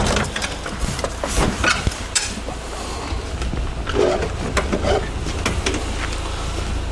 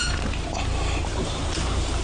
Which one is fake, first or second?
second